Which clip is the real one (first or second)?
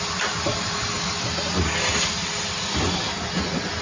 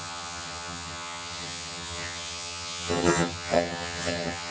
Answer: first